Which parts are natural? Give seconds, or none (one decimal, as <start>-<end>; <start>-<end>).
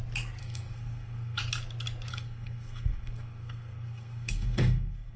0.0-0.4; 1.4-2.1